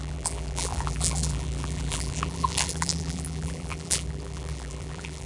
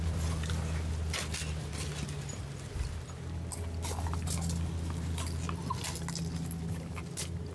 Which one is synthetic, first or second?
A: first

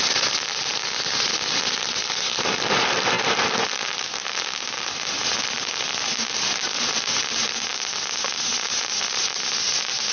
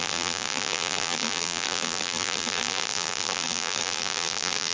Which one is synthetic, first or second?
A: second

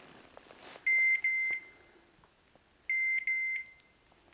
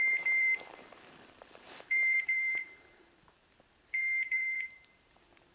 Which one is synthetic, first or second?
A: second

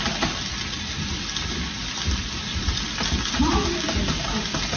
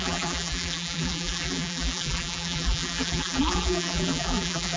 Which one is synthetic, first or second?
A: second